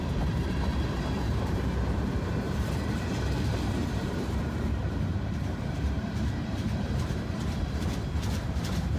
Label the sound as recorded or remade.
remade